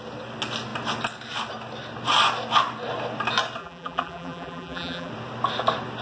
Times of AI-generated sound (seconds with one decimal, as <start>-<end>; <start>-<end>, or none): 3.6-5.1